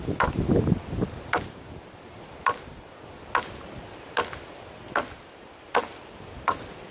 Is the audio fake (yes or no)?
no